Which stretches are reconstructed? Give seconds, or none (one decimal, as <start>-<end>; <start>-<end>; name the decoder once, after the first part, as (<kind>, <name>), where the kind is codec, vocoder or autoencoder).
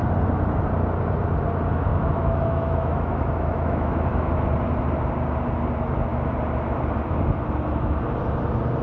1.9-4.2 (autoencoder, DAC-VAE)